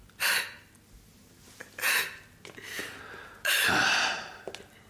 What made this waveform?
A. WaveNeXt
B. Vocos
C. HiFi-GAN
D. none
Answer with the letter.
D